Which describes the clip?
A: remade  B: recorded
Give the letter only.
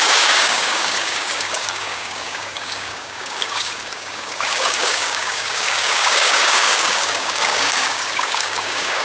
A